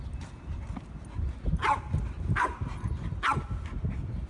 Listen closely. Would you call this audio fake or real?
real